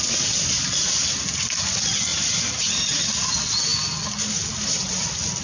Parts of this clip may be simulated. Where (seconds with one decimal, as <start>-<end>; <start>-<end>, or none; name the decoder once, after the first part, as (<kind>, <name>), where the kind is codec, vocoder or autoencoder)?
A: 3.7-4.5 (vocoder, BigVGAN v2)